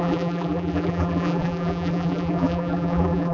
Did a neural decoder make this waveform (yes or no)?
yes